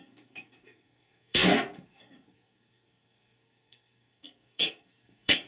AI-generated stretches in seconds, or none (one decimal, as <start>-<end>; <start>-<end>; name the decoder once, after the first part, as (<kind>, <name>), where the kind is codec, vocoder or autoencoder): 0.0-5.5 (codec, SNAC)